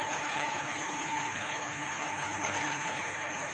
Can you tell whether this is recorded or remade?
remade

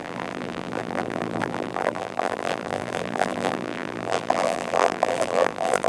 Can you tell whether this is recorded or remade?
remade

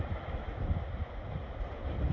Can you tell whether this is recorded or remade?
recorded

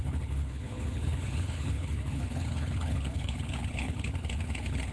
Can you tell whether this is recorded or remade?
remade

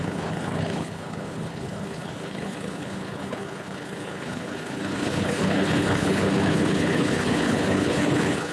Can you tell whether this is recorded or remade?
remade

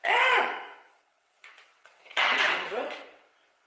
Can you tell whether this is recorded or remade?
remade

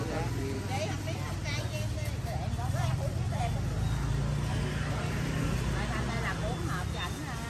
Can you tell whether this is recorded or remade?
recorded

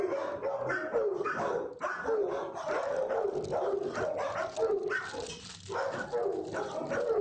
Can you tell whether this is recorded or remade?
recorded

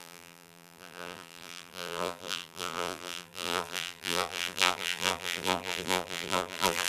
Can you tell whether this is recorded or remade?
remade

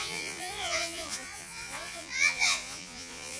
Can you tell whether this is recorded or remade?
remade